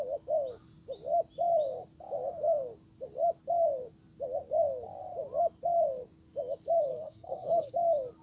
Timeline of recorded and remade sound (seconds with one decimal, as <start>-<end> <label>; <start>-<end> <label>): 0.0-6.9 recorded; 6.9-7.7 remade; 7.7-8.2 recorded